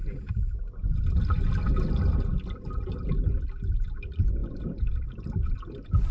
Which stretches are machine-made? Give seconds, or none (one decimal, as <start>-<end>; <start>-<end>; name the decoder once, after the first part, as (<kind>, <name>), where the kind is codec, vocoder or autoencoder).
none